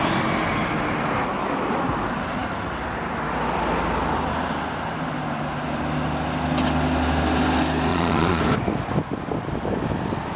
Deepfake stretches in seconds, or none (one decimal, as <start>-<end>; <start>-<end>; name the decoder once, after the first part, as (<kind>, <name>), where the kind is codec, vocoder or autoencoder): 7.9-8.4 (vocoder, Vocos)